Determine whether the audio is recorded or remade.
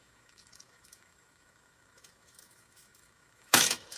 remade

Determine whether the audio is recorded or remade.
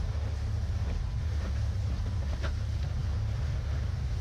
recorded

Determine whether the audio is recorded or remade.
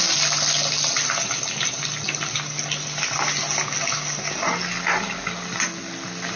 recorded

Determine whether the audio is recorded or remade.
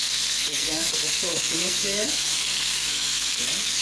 remade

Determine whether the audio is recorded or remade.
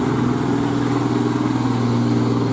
recorded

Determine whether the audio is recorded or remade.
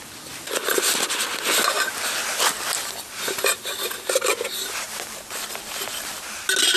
recorded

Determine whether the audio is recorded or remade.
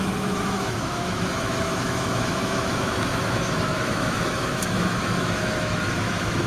remade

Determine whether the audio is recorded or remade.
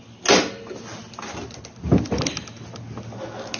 recorded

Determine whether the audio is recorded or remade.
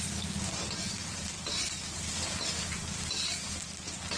recorded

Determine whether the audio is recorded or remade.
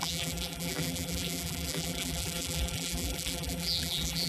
remade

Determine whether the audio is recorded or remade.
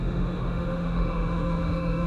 remade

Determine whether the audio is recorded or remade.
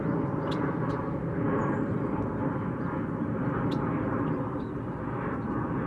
recorded